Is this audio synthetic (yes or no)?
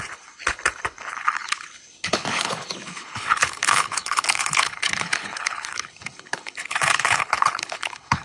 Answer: yes